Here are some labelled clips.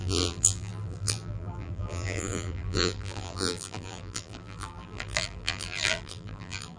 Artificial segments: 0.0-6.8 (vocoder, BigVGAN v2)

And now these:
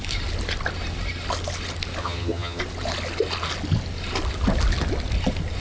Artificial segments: 2.0-2.6 (vocoder, HiFi-GAN)

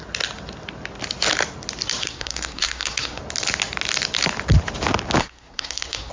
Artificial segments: 2.0-3.2 (codec, SNAC); 5.2-6.1

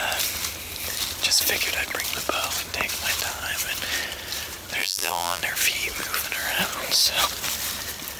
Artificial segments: 4.8-5.4 (vocoder, BigVGAN v2)